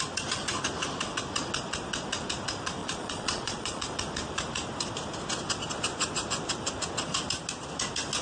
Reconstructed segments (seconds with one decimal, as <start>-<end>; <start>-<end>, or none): 2.8-3.8